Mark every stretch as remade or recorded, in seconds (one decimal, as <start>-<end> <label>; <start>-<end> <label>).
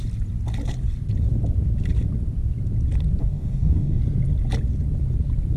0.0-3.2 recorded; 3.2-4.0 remade; 4.0-5.6 recorded